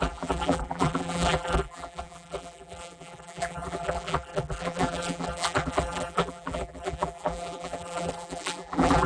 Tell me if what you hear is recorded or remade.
remade